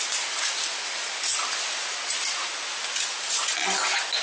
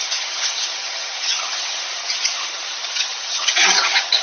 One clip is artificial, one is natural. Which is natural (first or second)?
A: first